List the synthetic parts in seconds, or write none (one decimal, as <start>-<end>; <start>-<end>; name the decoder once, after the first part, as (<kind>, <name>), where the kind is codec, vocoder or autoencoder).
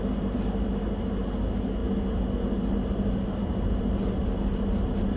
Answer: none